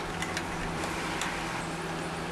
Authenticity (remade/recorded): recorded